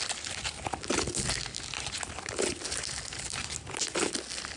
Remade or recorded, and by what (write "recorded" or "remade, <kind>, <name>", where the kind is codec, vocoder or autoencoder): recorded